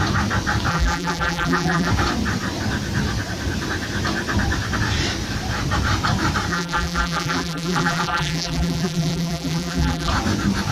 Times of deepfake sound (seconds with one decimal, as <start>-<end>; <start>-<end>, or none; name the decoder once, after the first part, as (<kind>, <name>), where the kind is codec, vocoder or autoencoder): 0.7-1.9 (vocoder, BigVGAN v2); 6.5-10.1